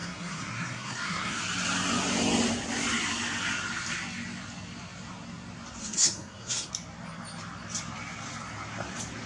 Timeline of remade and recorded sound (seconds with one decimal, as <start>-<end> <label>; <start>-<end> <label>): 0.0-1.4 remade; 1.4-5.8 recorded; 5.8-6.7 remade; 6.7-9.3 recorded